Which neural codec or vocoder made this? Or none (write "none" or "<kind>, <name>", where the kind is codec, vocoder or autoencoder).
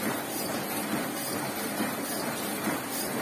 none